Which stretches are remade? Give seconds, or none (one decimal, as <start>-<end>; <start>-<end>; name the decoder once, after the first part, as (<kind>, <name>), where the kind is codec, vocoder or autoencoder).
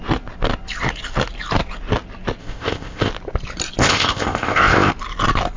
2.4-3.1 (codec, ZipCodec); 3.8-4.9